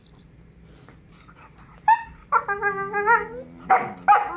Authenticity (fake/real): real